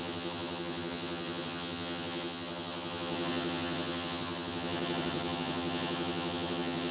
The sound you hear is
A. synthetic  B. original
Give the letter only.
A